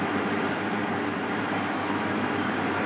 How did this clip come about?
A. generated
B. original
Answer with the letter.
A